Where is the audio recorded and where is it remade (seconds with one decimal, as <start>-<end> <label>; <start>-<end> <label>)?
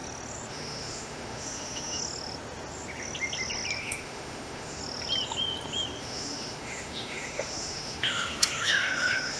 0.0-0.5 recorded; 0.5-2.0 remade; 2.0-3.8 recorded; 3.8-4.8 remade; 4.8-6.0 recorded; 6.0-9.4 remade